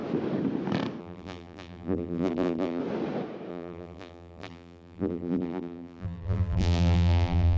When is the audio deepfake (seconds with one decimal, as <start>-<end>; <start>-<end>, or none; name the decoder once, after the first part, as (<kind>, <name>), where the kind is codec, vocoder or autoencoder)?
1.0-2.8 (vocoder, BigVGAN v2); 3.5-7.6